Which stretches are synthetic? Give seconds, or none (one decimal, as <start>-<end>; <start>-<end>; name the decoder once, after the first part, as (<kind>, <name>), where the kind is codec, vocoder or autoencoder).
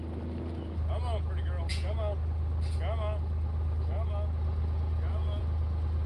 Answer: none